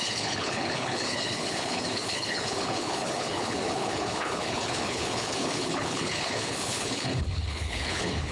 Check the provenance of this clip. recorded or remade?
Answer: remade